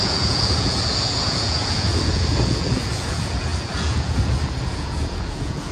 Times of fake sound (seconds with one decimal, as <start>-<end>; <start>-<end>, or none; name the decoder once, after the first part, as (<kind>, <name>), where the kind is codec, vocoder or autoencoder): 0.0-5.7 (vocoder, Vocos)